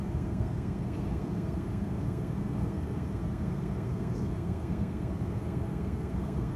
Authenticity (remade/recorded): remade